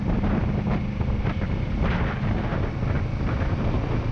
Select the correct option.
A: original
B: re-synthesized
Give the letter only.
A